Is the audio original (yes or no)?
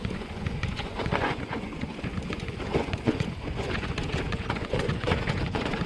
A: no